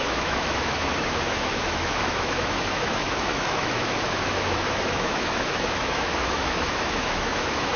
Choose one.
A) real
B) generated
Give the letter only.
B